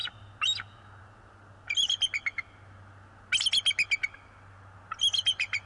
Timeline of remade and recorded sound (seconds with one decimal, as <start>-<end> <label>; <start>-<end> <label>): 0.0-5.7 recorded